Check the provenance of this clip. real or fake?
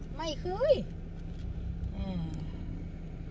real